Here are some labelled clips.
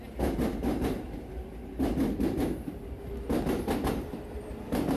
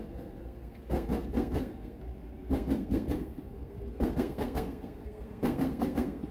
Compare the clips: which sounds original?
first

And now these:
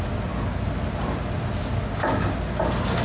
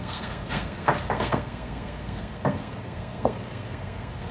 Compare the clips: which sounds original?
first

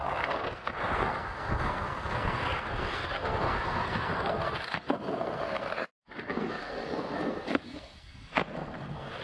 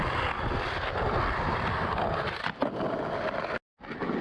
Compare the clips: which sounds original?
second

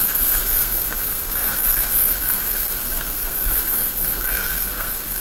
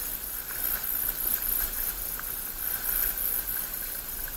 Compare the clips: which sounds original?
second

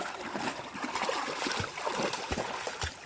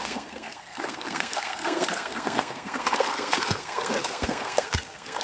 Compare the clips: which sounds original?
first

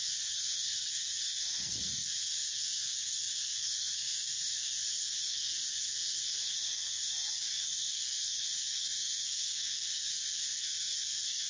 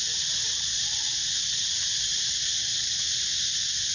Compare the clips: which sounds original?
second